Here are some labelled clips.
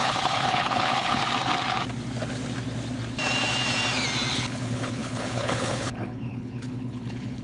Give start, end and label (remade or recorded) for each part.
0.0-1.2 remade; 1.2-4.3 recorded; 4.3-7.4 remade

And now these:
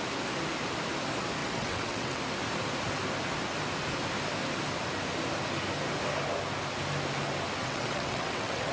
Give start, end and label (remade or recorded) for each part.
0.0-1.4 recorded; 1.4-2.2 remade; 2.2-7.6 recorded; 7.6-8.7 remade

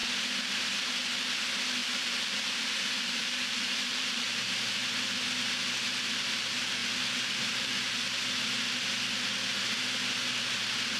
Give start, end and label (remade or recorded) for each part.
0.0-1.8 recorded; 1.8-4.6 remade; 4.6-6.8 recorded; 6.8-7.9 remade; 7.9-11.0 recorded

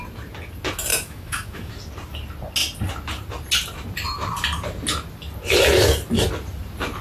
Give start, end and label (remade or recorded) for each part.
0.0-0.9 recorded; 0.9-1.7 remade; 1.7-7.0 recorded

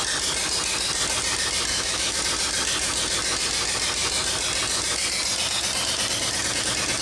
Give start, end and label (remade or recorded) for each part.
0.0-1.7 recorded; 1.7-2.2 remade; 2.2-7.0 recorded

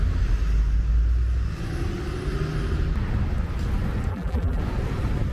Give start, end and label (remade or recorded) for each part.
0.0-4.1 recorded; 4.1-4.6 remade; 4.6-5.3 recorded

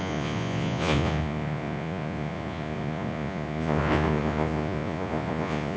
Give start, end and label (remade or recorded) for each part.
0.0-5.8 remade